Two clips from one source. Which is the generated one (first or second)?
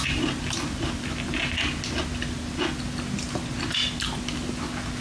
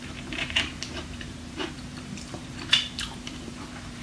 second